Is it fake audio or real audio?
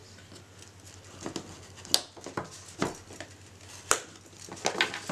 real